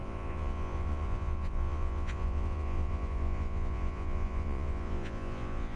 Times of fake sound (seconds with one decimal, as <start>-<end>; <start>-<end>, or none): 0.0-5.8